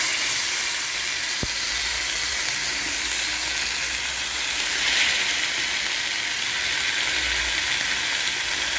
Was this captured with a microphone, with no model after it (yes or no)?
yes